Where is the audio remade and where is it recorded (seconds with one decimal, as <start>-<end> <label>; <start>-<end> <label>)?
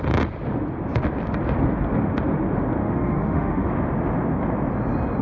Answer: 0.0-2.8 recorded; 2.8-3.7 remade; 3.7-5.2 recorded